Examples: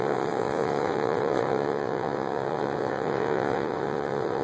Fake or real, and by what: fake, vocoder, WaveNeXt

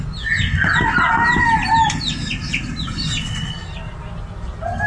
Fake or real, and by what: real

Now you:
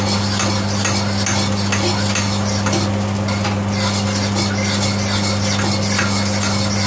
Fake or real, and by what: real